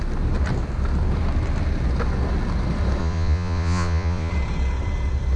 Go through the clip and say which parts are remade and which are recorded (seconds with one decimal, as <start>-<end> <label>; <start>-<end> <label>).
0.0-3.0 recorded; 3.0-4.3 remade; 4.3-5.4 recorded